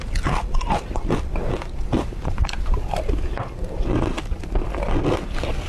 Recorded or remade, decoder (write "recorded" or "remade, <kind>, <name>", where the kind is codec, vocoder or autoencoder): recorded